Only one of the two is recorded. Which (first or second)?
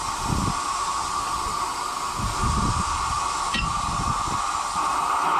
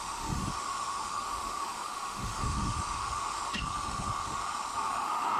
first